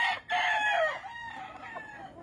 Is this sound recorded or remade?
recorded